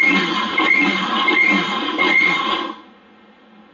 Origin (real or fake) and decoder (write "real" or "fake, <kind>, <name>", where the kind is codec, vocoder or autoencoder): fake, vocoder, Vocos